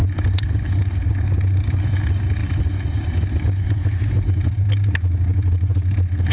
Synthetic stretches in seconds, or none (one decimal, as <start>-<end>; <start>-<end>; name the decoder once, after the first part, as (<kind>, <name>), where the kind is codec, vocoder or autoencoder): none